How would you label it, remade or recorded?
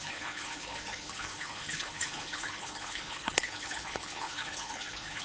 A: remade